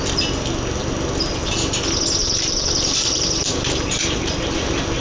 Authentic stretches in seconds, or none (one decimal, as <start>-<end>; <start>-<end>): 0.0-2.2; 4.6-5.0